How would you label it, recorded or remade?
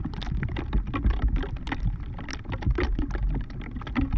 recorded